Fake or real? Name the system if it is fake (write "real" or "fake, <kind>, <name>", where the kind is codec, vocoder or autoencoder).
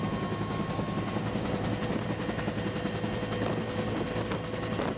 real